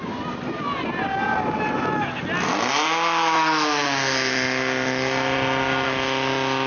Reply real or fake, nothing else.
real